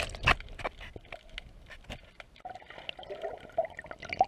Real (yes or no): yes